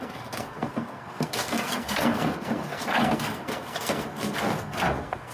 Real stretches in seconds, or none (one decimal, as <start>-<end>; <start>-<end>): none